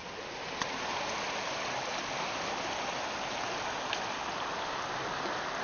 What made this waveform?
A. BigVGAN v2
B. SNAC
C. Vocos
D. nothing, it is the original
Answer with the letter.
D